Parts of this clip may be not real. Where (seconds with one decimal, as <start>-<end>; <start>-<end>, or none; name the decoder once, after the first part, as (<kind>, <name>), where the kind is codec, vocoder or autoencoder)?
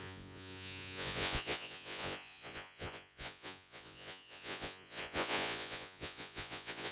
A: 0.0-6.9 (vocoder, Vocos)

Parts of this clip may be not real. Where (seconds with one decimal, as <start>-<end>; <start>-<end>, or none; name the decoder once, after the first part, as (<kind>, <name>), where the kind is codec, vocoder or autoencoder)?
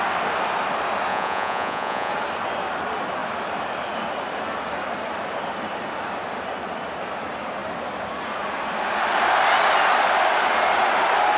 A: 1.1-2.1 (vocoder, Vocos)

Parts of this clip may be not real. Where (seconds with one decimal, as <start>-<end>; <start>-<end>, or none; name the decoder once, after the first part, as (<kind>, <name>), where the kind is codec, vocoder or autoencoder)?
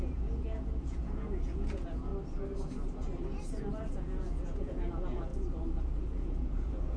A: 0.0-2.1 (vocoder, Vocos); 3.7-5.3; 5.8-7.0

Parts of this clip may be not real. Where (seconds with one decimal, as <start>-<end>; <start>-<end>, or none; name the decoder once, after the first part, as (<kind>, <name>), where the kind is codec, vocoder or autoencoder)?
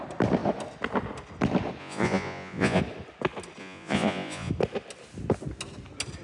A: 1.8-2.8 (vocoder, Vocos); 3.6-4.5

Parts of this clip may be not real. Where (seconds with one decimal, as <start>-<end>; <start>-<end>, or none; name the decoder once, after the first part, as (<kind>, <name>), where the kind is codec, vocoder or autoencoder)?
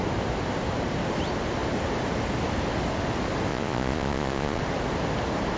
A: 3.5-4.6 (vocoder, Vocos)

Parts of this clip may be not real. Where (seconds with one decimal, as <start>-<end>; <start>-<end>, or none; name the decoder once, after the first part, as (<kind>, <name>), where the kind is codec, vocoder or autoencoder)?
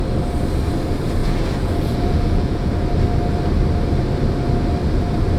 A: 1.2-2.7 (vocoder, Vocos)